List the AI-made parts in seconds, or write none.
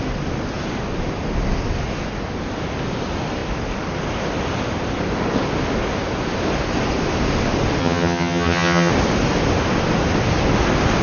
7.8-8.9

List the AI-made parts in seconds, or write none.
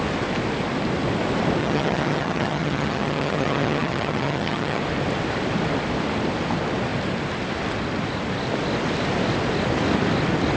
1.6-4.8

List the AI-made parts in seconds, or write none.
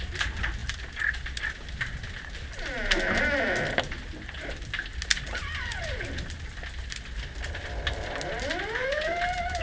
none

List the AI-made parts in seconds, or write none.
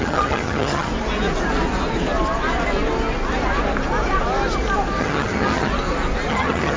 0.0-0.9; 5.0-5.7; 6.3-6.8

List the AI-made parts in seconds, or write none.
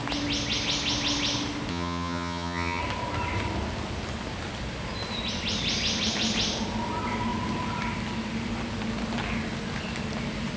1.7-2.8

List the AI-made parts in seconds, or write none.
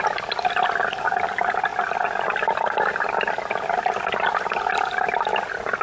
none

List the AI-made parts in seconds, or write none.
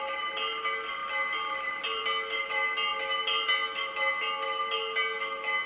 none